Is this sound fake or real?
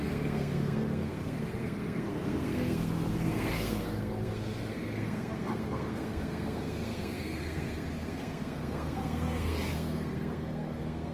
fake